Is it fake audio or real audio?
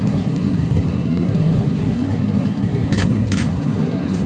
fake